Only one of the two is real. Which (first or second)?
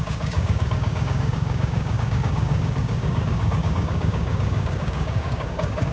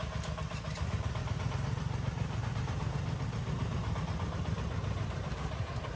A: second